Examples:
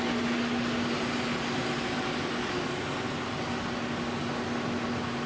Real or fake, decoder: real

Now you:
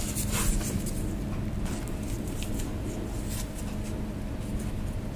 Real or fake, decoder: real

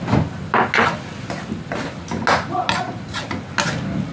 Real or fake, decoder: real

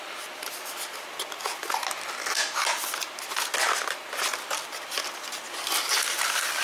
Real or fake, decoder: real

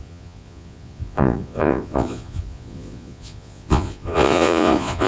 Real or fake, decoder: fake, vocoder, Vocos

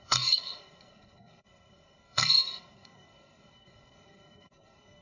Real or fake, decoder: fake, codec, SNAC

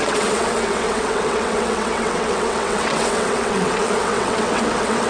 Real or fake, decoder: fake, vocoder, WaveNeXt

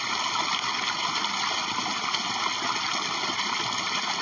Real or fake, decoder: real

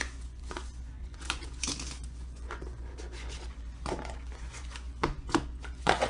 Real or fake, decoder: fake, vocoder, Vocos